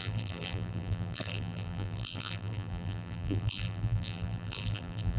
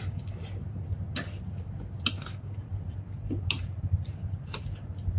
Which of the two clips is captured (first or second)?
second